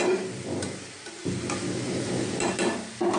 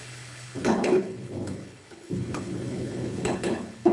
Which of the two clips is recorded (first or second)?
first